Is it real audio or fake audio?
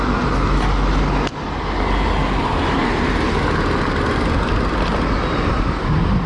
real